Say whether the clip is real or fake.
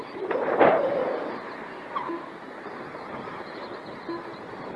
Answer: real